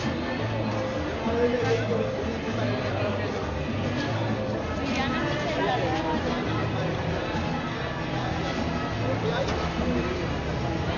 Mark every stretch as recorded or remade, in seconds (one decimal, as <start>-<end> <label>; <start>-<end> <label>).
0.0-11.0 recorded